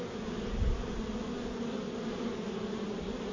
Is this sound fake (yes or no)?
no